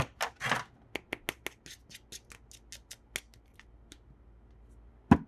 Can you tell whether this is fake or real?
real